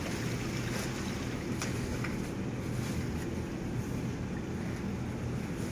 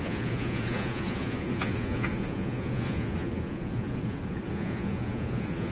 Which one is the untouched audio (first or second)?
first